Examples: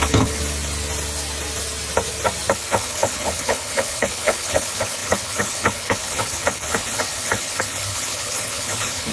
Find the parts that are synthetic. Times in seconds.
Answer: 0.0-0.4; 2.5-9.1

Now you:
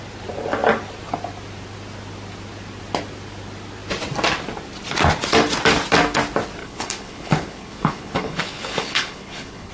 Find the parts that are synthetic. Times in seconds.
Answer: 6.6-9.7

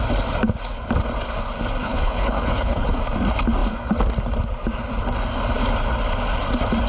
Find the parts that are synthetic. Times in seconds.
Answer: 1.8-2.9

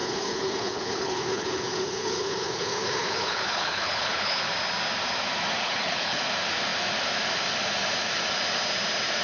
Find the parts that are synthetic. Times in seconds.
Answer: 0.0-4.4; 5.6-6.2

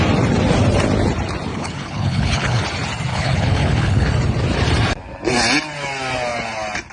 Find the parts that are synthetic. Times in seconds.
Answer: 1.5-2.6; 3.1-4.1

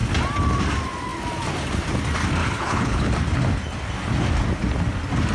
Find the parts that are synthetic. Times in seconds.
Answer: 2.4-3.1

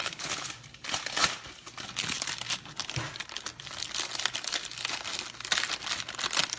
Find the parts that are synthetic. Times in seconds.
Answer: 0.0-0.5

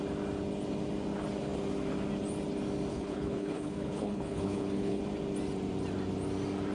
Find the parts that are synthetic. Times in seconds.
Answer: 2.9-5.0